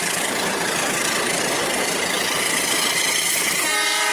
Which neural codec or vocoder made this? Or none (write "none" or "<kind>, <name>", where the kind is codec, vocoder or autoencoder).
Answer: vocoder, BigVGAN v2